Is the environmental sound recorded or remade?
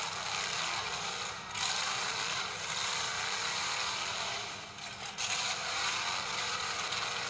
recorded